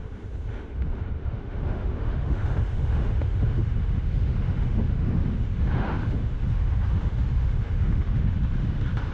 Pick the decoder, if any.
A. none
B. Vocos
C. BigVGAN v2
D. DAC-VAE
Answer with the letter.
D